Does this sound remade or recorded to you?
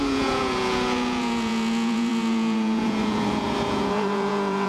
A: remade